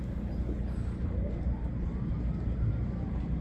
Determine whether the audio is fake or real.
real